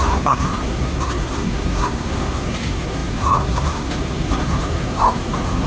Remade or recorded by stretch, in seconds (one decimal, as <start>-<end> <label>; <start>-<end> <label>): 0.0-5.7 remade